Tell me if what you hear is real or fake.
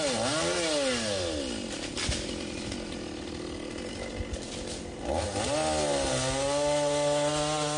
real